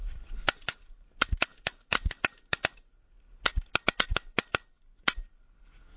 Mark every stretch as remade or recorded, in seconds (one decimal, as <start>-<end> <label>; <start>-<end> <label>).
0.0-6.0 recorded